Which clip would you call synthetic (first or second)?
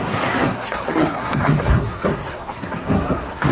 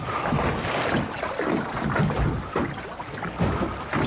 first